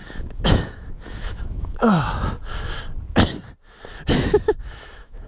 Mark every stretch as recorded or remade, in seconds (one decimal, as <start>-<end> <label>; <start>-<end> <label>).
0.0-2.1 remade; 2.1-3.9 recorded; 3.9-5.3 remade